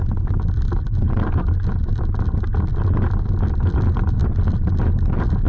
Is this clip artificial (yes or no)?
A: no